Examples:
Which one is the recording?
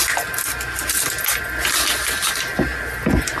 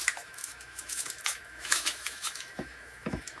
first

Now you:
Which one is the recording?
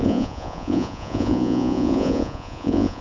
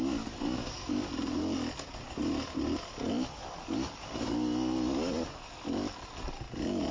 second